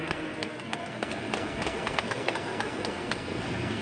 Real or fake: fake